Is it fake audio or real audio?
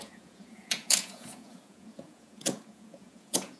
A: fake